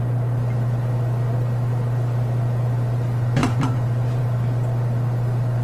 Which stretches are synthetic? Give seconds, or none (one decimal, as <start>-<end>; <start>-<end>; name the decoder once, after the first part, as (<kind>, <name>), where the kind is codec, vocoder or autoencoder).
3.4-4.2 (vocoder, BigVGAN v2)